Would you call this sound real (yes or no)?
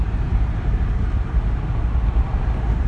yes